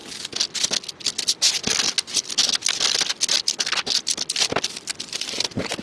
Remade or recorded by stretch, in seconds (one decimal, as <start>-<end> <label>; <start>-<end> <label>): 0.0-5.8 recorded